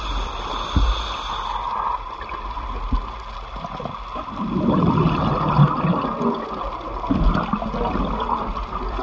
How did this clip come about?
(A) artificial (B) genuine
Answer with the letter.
B